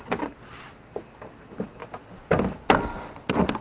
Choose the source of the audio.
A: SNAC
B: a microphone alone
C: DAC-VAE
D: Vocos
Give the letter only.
B